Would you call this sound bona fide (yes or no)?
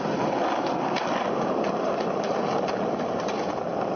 yes